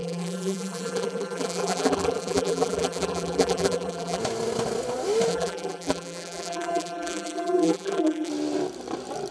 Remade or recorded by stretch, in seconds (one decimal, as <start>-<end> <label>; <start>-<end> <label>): 0.0-4.2 remade; 4.2-5.3 recorded; 5.3-8.3 remade; 8.3-9.3 recorded